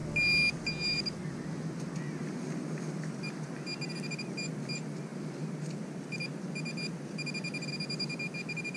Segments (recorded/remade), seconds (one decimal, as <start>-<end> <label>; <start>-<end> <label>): 0.0-8.8 recorded